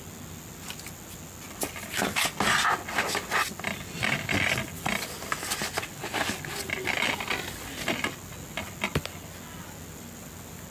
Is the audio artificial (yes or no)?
no